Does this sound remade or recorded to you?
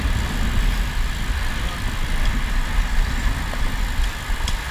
recorded